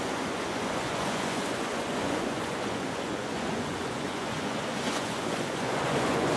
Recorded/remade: remade